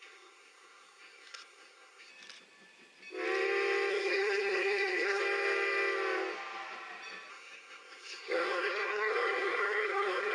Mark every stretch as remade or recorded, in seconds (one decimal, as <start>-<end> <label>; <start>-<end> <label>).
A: 0.0-2.1 remade; 2.1-3.9 recorded; 3.9-5.2 remade; 5.2-7.3 recorded; 7.3-10.3 remade